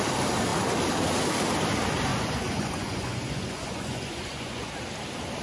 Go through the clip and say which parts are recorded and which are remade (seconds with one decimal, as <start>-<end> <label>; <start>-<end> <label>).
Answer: 0.0-2.1 recorded; 2.1-4.7 remade; 4.7-5.4 recorded